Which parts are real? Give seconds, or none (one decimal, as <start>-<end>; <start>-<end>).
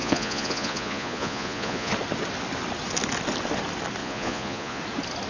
1.9-4.0; 4.8-5.3